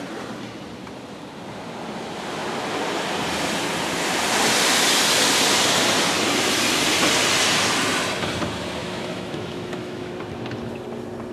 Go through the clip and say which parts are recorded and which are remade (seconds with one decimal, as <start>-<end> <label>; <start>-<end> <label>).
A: 0.0-8.8 recorded; 8.8-10.1 remade; 10.1-11.3 recorded